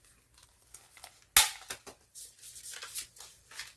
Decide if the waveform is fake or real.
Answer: real